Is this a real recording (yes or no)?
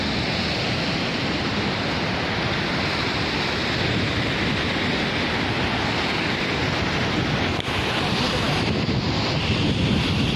yes